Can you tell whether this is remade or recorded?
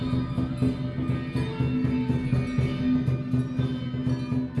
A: recorded